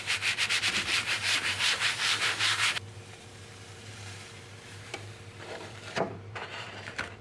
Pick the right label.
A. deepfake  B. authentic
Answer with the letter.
A